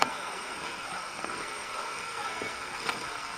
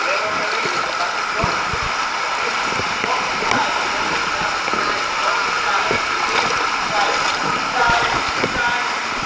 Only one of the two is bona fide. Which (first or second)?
second